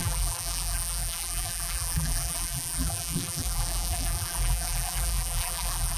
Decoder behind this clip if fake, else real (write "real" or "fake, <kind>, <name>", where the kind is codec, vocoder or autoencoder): fake, vocoder, BigVGAN v2